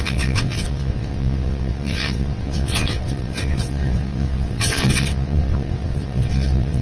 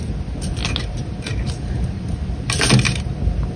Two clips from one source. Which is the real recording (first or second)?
second